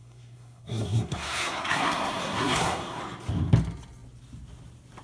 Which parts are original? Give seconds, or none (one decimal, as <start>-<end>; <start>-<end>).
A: 3.0-5.0